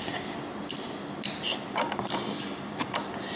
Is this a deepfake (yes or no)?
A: no